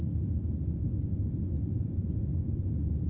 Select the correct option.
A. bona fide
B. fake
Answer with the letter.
A